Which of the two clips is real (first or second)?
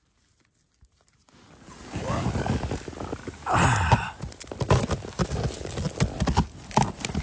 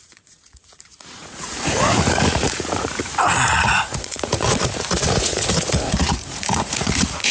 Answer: first